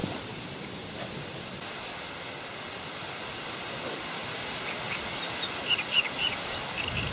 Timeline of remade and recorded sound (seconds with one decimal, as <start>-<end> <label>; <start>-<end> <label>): 0.0-7.1 recorded